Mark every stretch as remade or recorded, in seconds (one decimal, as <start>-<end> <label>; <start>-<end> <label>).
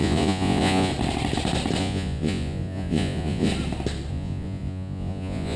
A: 0.0-0.9 remade; 0.9-1.8 recorded; 1.8-3.5 remade; 3.5-4.1 recorded; 4.1-5.6 remade